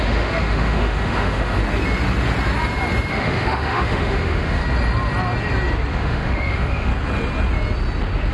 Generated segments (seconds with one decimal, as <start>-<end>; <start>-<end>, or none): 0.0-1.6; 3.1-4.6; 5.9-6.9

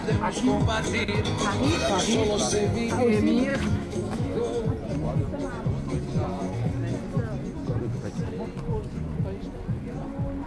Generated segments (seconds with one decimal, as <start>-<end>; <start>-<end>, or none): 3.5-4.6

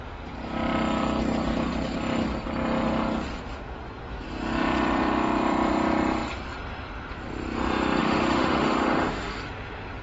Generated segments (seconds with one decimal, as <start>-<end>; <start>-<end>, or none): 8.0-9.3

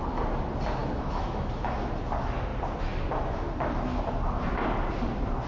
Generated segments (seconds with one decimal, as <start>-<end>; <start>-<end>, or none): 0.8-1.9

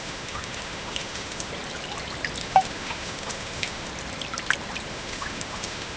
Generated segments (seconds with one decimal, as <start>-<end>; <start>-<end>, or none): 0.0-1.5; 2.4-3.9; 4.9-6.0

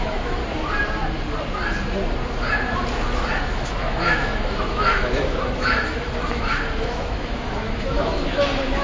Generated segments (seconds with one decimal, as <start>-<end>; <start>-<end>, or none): 0.0-0.4; 3.3-8.8